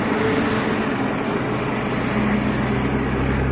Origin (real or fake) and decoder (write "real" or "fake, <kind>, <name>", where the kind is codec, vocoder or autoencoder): real